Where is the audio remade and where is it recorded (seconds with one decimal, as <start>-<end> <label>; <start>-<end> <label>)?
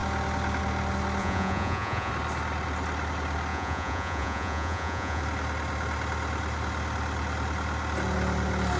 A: 0.0-1.2 recorded; 1.2-2.1 remade; 2.1-3.5 recorded; 3.5-5.2 remade; 5.2-8.8 recorded